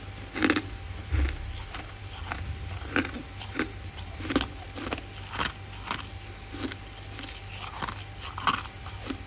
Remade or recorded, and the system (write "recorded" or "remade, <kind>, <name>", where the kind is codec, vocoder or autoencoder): recorded